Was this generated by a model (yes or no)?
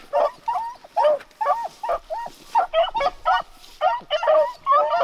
no